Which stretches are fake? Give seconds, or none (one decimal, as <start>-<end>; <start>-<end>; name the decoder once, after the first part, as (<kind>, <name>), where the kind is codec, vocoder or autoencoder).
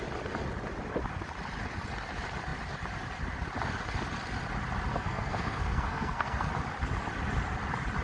4.9-6.5 (codec, SNAC)